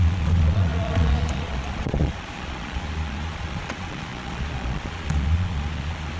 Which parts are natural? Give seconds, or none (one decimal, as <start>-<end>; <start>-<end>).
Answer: none